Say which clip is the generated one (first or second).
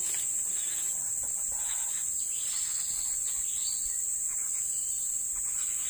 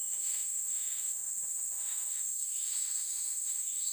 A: second